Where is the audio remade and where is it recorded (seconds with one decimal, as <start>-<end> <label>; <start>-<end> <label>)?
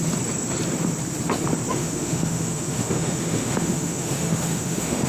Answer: 0.0-1.7 recorded; 1.7-5.1 remade